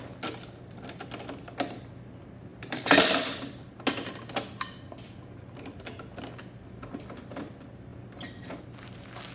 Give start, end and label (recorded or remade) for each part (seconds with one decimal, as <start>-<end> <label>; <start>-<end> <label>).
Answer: 0.0-2.5 recorded; 2.5-3.7 remade; 3.7-7.9 recorded; 7.9-8.5 remade; 8.5-9.3 recorded